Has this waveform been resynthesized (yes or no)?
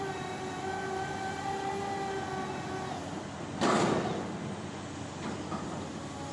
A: no